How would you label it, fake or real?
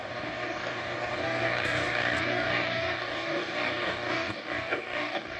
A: fake